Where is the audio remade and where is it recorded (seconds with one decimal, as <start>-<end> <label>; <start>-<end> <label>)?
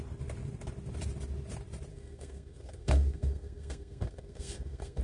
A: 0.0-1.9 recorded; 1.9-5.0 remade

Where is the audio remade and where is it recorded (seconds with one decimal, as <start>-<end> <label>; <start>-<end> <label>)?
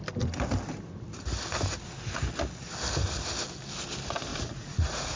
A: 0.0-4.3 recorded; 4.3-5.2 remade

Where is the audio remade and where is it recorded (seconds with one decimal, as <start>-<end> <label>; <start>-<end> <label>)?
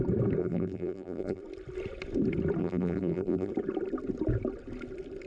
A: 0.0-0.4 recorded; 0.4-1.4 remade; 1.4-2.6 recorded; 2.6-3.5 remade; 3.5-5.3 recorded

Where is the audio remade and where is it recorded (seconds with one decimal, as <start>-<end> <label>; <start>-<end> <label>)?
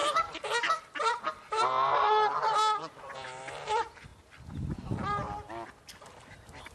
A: 0.0-4.1 remade; 4.1-6.3 recorded; 6.3-6.7 remade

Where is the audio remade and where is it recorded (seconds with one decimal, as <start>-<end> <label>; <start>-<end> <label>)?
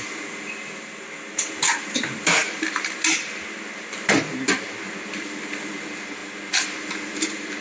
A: 0.0-7.6 recorded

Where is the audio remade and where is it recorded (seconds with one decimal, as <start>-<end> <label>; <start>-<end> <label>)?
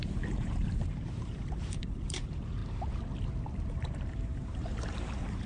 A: 0.0-2.6 remade; 2.6-3.7 recorded; 3.7-5.5 remade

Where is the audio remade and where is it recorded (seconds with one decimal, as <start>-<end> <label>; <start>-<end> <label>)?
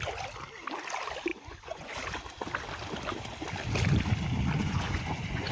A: 0.0-1.3 recorded; 1.3-1.9 remade; 1.9-4.6 recorded; 4.6-5.5 remade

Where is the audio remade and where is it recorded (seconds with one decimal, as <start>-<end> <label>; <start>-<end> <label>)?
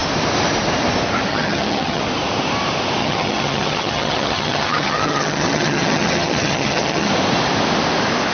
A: 0.0-1.3 recorded; 1.3-2.0 remade; 2.0-3.0 recorded; 3.0-7.1 remade; 7.1-8.3 recorded